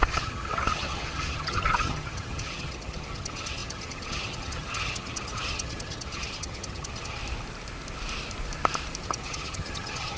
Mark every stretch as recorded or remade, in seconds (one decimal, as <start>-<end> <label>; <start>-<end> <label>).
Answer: 0.0-7.2 remade; 7.2-9.0 recorded; 9.0-10.2 remade